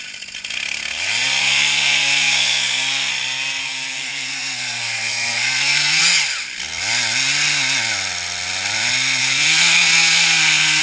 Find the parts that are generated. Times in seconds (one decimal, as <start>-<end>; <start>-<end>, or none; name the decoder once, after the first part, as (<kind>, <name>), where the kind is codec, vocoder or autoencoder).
1.4-3.1 (codec, SNAC); 3.6-6.0; 9.2-10.8